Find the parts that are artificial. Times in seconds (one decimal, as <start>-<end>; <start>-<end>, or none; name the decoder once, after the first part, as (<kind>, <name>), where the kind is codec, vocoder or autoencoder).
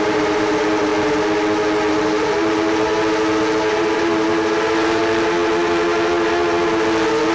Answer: 0.0-0.9 (vocoder, BigVGAN v2); 1.9-2.9; 3.7-5.0